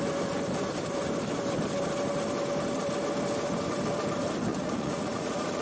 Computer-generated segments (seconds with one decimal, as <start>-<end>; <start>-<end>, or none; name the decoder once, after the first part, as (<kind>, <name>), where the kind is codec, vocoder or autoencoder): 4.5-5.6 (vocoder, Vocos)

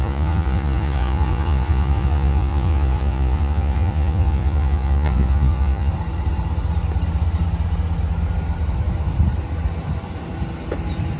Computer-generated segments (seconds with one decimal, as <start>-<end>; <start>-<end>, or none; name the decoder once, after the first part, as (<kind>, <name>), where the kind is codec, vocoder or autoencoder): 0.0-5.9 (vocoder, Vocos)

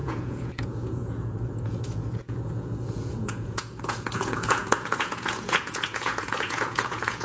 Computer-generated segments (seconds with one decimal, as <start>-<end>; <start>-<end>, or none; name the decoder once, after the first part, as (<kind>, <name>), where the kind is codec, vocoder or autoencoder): 0.0-7.2 (vocoder, Vocos)

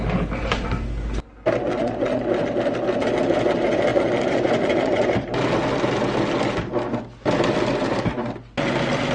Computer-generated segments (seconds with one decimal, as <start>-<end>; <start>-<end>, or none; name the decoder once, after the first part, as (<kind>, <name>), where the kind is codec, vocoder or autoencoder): 1.7-2.2 (vocoder, Vocos); 3.9-5.3

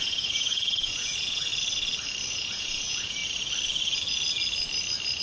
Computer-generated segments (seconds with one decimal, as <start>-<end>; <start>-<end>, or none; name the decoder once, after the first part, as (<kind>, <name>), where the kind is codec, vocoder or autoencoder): 0.0-1.5 (vocoder, Vocos); 2.3-3.2

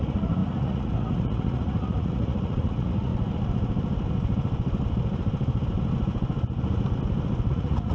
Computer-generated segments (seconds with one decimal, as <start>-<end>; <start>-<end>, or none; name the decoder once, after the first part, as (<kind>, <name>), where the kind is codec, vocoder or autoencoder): 0.0-3.1 (vocoder, Vocos); 7.5-7.9

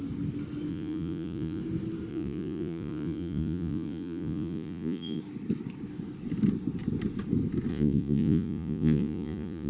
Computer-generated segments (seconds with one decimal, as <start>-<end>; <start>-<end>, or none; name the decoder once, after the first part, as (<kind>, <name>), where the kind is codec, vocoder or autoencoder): 0.7-1.6 (vocoder, Vocos); 2.1-5.2; 7.7-9.7